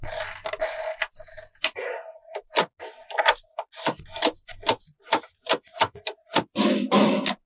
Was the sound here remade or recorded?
recorded